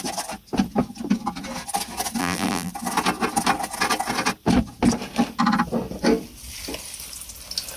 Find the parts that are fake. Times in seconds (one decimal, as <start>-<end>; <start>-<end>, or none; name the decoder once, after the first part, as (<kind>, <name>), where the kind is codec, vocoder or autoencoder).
2.2-2.7 (vocoder, BigVGAN v2)